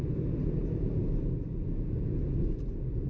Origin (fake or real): real